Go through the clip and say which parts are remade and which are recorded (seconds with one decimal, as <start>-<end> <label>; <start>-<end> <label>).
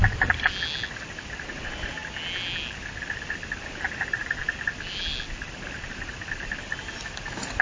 0.0-7.6 recorded